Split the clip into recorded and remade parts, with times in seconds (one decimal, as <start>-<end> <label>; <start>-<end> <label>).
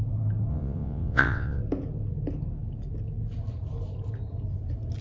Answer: 0.0-0.5 recorded; 0.5-1.6 remade; 1.6-5.0 recorded